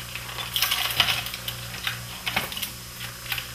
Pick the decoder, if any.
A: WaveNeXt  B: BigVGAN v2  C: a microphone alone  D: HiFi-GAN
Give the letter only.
C